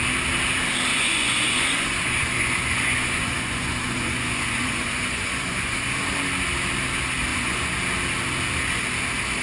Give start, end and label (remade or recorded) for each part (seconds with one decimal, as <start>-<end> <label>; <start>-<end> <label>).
0.0-0.9 recorded; 0.9-5.9 remade; 5.9-7.3 recorded; 7.3-7.8 remade; 7.8-9.4 recorded

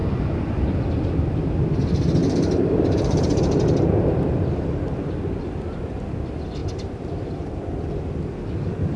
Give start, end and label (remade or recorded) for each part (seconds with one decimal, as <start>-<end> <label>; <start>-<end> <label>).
0.0-2.2 recorded; 2.2-3.4 remade; 3.4-6.6 recorded; 6.6-7.1 remade; 7.1-9.0 recorded